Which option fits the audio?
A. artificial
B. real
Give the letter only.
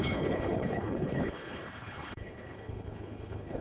A